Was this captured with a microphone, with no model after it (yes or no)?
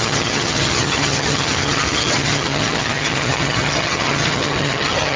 no